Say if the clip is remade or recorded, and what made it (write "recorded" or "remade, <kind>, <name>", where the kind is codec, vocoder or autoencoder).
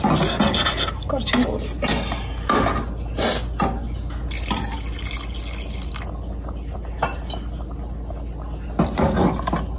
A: recorded